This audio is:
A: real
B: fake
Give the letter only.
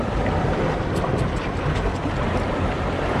A